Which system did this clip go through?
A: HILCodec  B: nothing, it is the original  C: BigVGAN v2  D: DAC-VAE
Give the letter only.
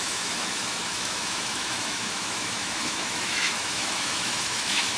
D